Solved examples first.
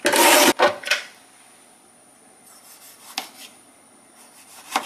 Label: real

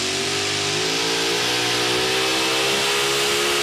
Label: real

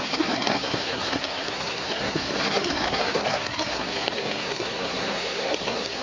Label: fake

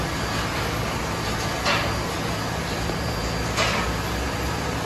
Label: real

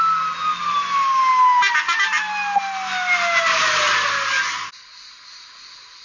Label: real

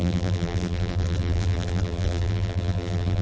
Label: fake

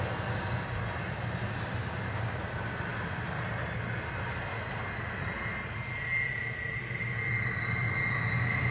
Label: real